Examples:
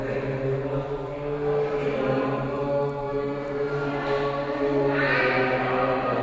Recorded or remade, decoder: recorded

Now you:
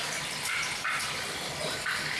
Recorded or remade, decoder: remade, vocoder, BigVGAN v2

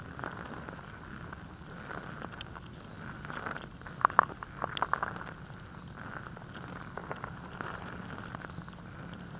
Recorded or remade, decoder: recorded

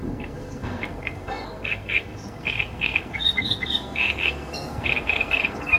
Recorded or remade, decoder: remade, codec, SNAC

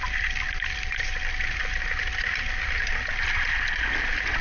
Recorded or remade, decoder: recorded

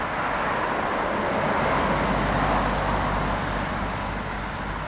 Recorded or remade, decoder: recorded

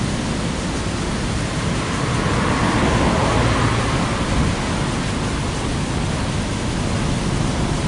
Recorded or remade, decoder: recorded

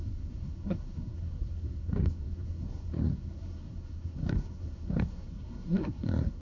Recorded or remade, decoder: remade, codec, SNAC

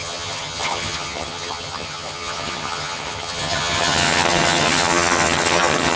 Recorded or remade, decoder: remade, vocoder, HiFi-GAN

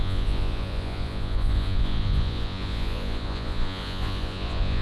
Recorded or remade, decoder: remade, vocoder, Vocos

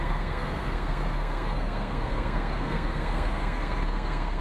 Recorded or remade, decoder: remade, codec, SNAC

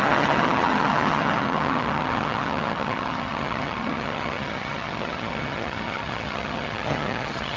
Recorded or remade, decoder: remade, vocoder, HiFi-GAN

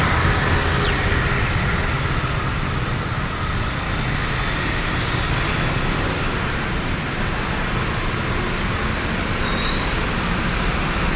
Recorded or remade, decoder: recorded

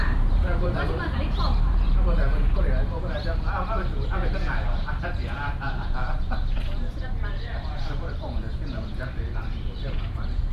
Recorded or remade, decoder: remade, vocoder, BigVGAN v2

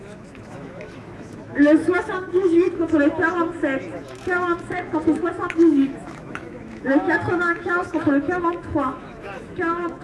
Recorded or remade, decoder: remade, autoencoder, DAC-VAE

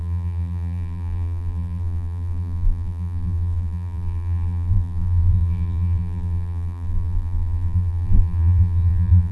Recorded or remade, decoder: remade, vocoder, BigVGAN v2